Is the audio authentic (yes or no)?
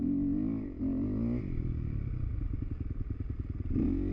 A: yes